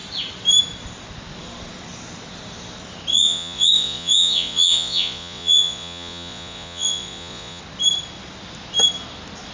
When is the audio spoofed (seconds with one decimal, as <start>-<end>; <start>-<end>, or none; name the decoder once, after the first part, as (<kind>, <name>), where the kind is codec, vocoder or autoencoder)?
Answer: 3.1-7.6 (vocoder, Vocos)